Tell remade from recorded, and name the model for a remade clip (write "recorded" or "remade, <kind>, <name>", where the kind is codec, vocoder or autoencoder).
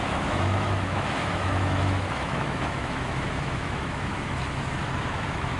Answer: remade, autoencoder, DAC-VAE